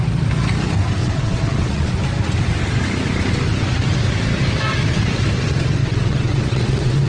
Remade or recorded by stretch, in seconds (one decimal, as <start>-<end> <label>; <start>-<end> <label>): 0.0-1.0 recorded; 1.0-1.9 remade; 1.9-5.8 recorded; 5.8-7.1 remade

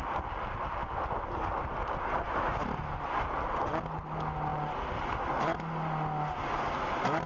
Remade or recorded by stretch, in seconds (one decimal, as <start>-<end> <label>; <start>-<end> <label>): 0.0-7.3 recorded